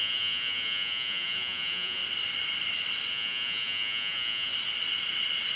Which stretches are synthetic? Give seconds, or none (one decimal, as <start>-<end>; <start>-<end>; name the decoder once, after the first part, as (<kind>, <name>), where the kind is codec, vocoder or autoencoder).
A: 0.0-2.0 (vocoder, Vocos); 3.1-4.5